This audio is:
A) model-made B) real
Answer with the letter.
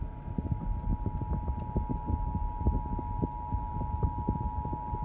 B